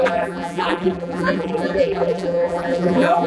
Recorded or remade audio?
remade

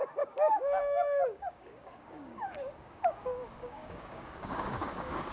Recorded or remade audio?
remade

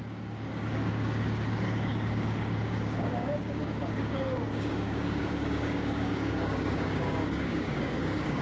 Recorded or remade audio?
remade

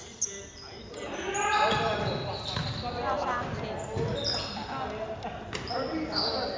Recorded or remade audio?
recorded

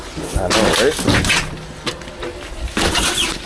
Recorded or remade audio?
recorded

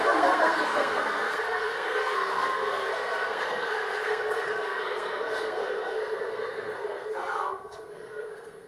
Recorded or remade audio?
remade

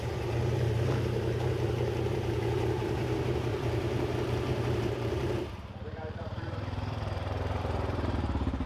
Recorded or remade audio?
remade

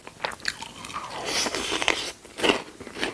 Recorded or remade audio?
recorded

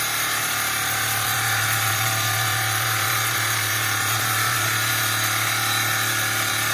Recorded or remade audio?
remade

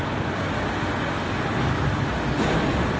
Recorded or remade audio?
recorded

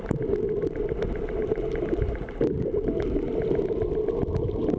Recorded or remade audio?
recorded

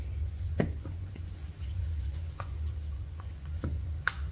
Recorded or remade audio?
remade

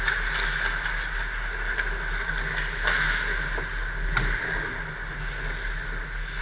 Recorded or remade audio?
recorded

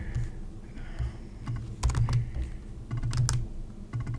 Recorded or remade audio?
recorded